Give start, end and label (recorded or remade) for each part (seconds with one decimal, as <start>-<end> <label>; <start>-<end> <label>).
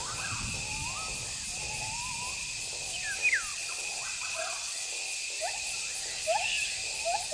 0.0-3.5 recorded; 3.5-4.9 remade; 4.9-7.3 recorded